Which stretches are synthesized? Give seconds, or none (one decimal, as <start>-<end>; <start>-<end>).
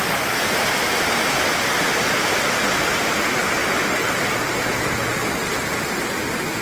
none